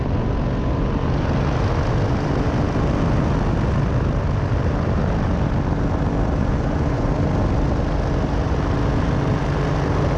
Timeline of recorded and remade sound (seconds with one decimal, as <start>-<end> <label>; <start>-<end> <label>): 0.0-6.4 recorded; 6.4-7.1 remade; 7.1-10.2 recorded